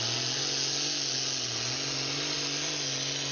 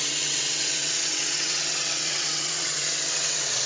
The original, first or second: first